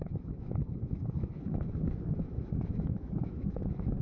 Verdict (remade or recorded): remade